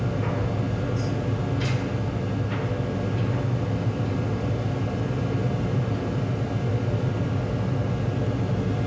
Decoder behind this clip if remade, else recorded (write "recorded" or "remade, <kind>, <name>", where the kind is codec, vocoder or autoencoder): recorded